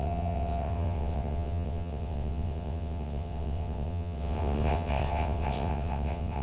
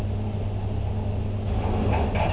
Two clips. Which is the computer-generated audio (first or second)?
first